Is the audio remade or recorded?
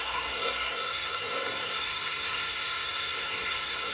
remade